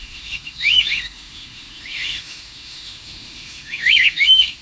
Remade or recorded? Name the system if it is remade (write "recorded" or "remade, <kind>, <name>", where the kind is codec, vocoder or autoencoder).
remade, autoencoder, DAC-VAE